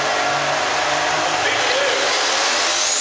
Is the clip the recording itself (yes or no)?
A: yes